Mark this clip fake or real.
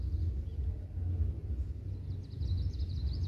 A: real